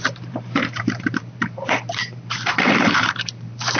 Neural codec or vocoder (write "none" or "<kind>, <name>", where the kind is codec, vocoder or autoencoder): vocoder, BigVGAN v2